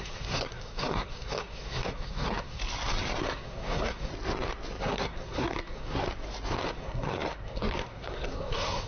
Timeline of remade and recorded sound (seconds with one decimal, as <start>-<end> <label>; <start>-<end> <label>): 0.0-2.6 remade; 2.6-3.2 recorded; 3.2-4.1 remade; 4.1-4.8 recorded; 4.8-6.0 remade; 6.0-6.7 recorded; 6.7-8.9 remade